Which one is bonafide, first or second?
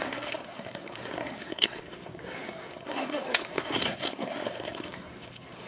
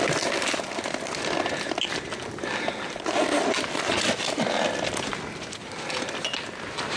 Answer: second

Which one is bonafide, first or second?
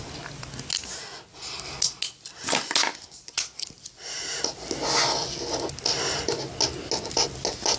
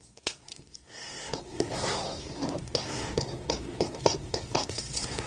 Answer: first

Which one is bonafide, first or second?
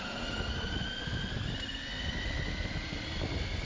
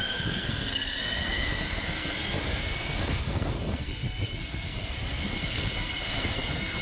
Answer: first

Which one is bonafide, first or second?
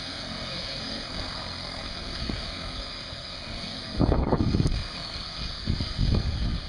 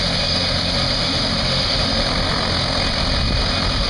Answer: second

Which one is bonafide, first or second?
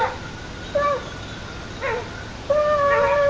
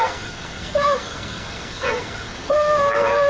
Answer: first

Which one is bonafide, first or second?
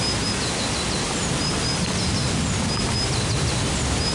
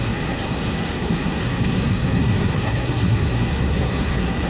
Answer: first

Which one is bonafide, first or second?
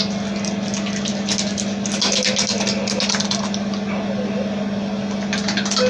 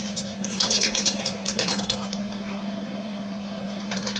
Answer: first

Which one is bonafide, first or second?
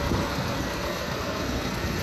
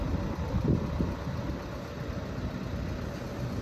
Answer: second